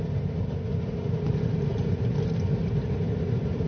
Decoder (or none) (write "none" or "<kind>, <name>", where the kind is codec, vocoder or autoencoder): none